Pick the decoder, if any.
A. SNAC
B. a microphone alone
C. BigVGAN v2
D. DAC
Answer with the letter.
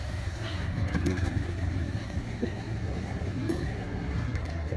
A